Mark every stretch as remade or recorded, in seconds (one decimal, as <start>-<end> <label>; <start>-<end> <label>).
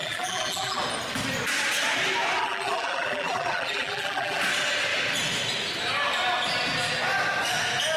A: 0.0-0.8 remade; 0.8-2.4 recorded; 2.4-4.4 remade; 4.4-8.0 recorded